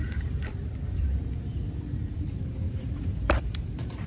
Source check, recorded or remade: remade